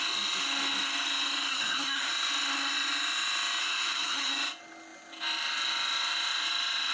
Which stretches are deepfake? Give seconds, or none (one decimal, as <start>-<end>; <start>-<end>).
1.5-2.1; 3.6-4.3